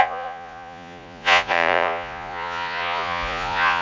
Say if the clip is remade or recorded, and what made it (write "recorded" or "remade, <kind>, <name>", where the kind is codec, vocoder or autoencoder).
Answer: remade, vocoder, Vocos